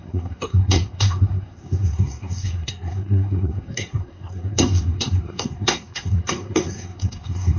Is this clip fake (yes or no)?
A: yes